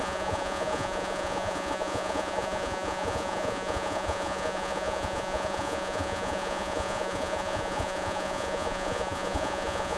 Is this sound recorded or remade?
remade